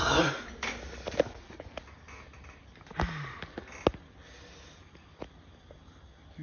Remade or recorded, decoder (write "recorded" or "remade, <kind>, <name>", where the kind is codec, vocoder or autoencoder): recorded